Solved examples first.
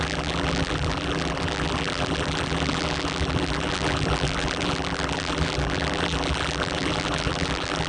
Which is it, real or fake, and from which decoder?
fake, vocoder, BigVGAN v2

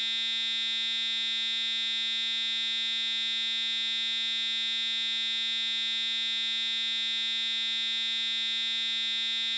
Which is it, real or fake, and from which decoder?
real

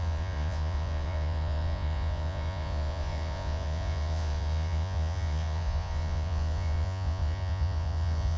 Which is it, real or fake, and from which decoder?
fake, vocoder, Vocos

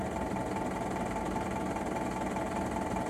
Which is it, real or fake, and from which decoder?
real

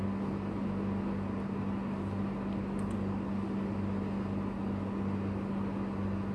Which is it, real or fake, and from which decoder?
real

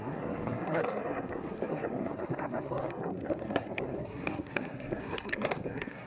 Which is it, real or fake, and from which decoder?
fake, codec, SNAC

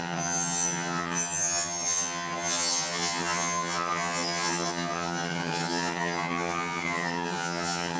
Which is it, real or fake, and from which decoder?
fake, vocoder, HiFi-GAN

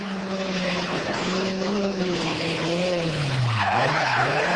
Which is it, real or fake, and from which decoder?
fake, codec, HILCodec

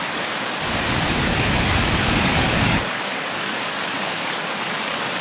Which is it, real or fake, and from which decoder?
fake, codec, DAC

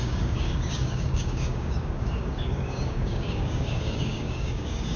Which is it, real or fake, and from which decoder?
fake, codec, DAC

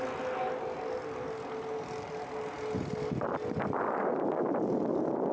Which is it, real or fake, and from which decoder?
real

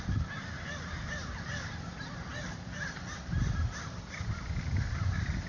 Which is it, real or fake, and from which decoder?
real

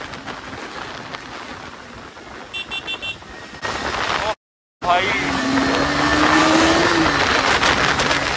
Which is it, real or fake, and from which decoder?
real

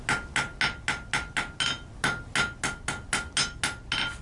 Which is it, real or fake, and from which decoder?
real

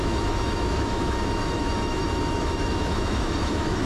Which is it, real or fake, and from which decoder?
fake, autoencoder, DAC-VAE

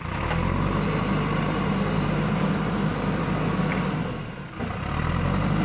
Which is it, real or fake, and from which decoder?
real